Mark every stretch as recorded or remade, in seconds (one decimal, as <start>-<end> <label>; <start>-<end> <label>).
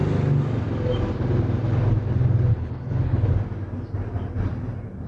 0.0-2.5 recorded; 2.5-3.3 remade; 3.3-5.1 recorded